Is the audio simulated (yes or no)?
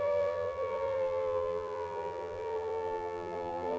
yes